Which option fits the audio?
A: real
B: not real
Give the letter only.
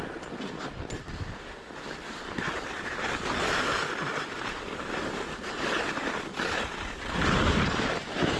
A